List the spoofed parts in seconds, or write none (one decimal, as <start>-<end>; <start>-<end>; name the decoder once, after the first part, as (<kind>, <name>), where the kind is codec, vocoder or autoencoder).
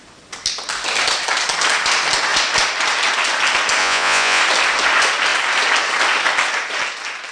3.8-4.4 (vocoder, Vocos)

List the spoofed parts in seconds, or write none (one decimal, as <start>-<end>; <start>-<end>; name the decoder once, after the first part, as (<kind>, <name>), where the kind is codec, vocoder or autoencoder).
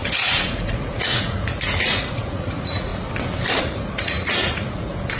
0.0-2.9 (vocoder, Vocos); 3.6-5.2